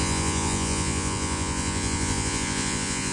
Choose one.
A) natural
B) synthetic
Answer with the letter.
B